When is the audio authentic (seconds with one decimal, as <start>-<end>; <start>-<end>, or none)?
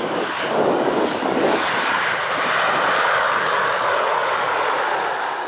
2.0-3.1